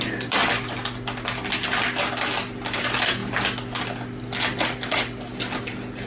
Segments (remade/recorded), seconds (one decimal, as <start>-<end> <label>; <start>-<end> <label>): 0.0-6.1 recorded